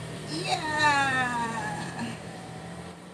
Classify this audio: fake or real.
fake